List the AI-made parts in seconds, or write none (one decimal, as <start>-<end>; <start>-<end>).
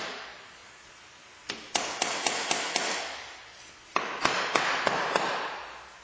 none